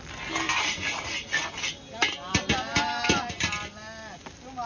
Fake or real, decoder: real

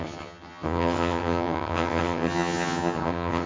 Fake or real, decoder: fake, vocoder, HiFi-GAN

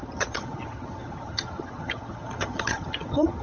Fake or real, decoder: fake, vocoder, HiFi-GAN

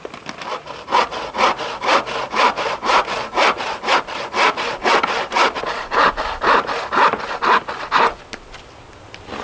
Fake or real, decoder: real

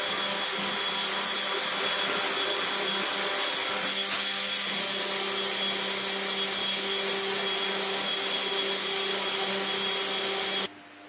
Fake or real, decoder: real